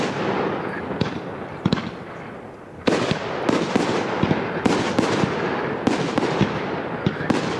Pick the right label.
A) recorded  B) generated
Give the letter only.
A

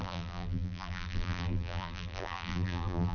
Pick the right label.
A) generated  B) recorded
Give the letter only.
A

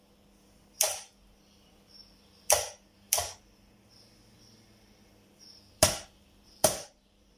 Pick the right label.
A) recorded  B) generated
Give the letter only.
B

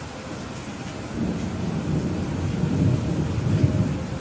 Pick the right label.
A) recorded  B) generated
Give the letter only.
A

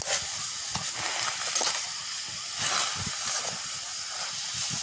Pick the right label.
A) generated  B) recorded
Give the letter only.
B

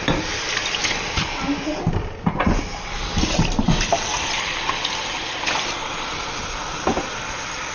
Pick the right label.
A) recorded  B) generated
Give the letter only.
A